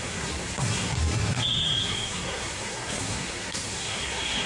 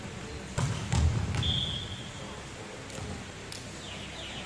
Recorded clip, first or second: second